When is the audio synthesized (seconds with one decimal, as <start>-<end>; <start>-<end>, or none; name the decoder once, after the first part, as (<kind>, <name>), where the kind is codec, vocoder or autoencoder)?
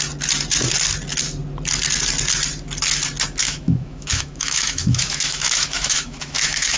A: 3.4-6.8 (autoencoder, DAC-VAE)